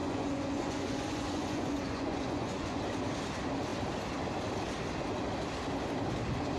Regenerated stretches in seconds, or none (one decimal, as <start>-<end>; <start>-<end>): 0.0-2.8